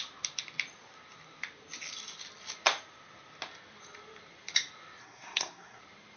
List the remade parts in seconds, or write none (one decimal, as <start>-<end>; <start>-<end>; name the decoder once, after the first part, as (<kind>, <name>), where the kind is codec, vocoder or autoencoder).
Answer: 5.0-5.8 (codec, SNAC)